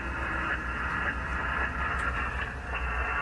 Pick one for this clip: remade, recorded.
recorded